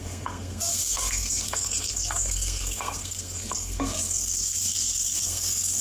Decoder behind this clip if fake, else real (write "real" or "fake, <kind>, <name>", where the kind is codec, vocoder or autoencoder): fake, codec, SNAC